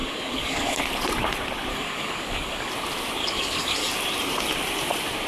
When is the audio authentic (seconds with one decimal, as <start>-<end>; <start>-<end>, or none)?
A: 0.8-1.7; 2.7-3.2; 3.9-5.3